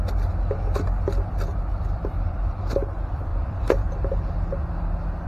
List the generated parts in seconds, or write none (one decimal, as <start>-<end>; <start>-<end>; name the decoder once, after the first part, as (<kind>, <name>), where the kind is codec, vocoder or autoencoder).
1.7-2.7 (vocoder, BigVGAN v2); 3.3-4.5